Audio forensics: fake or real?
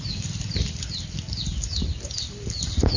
real